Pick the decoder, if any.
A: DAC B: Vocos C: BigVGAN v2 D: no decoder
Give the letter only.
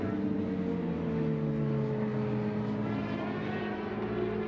D